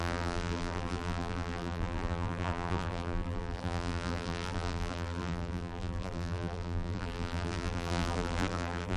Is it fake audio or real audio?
fake